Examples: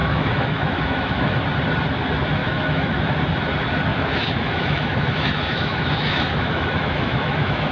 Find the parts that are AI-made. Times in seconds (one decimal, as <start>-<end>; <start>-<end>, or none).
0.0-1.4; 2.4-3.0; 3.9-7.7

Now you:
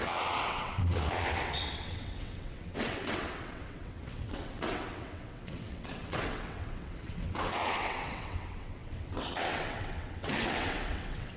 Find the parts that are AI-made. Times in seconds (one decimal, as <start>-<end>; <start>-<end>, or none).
0.0-11.4

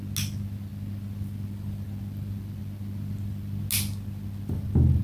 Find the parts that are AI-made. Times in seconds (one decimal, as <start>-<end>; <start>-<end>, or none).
none

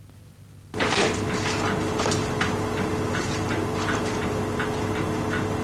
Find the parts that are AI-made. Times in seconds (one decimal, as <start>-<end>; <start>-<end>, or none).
0.6-4.0

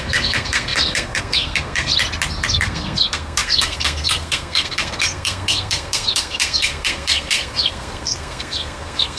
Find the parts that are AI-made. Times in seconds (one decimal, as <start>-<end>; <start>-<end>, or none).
0.0-1.9; 2.5-9.2